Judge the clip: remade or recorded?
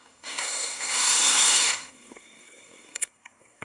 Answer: remade